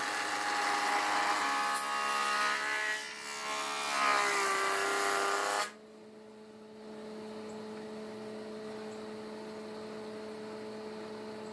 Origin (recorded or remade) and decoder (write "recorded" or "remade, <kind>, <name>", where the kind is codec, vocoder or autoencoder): recorded